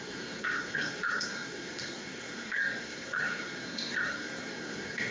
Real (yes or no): no